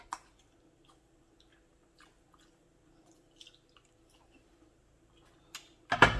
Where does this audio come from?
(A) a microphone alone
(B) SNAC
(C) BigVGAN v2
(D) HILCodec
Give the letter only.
A